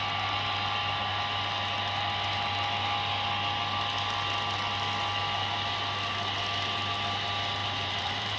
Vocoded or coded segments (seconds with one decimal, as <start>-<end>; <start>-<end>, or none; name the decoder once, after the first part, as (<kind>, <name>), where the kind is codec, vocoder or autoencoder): 7.6-8.4 (vocoder, BigVGAN v2)